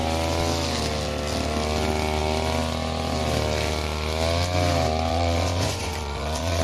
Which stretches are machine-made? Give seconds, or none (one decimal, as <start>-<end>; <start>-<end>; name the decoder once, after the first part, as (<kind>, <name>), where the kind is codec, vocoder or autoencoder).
5.1-6.6 (vocoder, Vocos)